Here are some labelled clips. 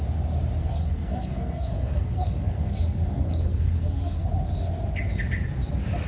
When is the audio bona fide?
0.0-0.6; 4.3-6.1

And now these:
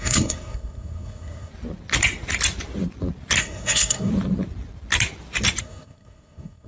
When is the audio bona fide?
1.5-3.4; 4.1-5.6

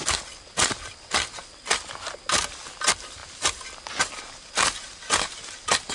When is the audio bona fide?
0.0-5.9

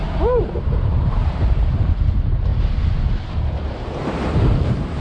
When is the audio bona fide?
2.5-3.6

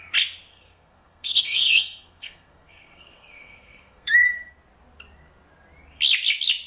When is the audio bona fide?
0.0-0.5; 4.5-6.7

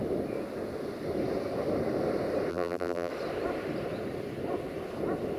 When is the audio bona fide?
0.0-2.5; 3.1-5.4